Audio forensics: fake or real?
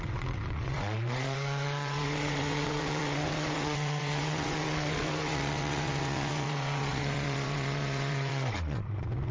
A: fake